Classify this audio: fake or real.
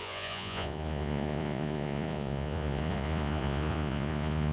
fake